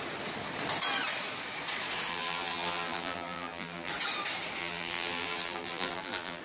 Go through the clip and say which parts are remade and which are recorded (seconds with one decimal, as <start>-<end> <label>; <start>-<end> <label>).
0.0-2.1 recorded; 2.1-3.9 remade; 3.9-4.6 recorded; 4.6-6.4 remade